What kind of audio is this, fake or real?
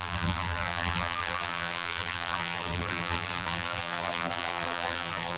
fake